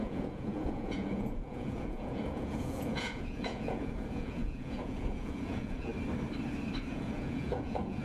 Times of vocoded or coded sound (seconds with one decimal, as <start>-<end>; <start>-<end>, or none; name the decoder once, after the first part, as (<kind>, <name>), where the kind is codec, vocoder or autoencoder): 0.0-5.9 (vocoder, Vocos); 6.9-8.0